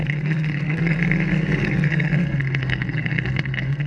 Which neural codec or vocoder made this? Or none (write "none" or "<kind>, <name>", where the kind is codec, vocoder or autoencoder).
codec, SNAC